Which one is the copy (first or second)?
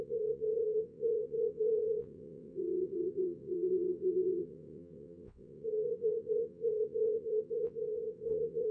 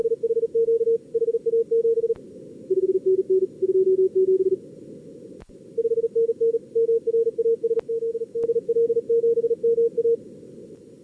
first